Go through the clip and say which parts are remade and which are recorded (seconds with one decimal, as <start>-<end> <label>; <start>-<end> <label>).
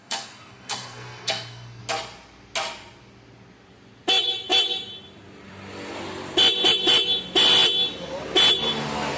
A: 0.0-1.8 remade; 1.8-9.2 recorded